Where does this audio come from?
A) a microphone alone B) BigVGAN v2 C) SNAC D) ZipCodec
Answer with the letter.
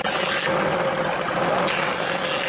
A